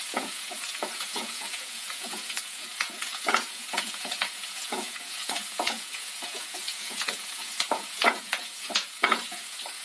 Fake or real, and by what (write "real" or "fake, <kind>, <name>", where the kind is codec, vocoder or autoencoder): fake, vocoder, Vocos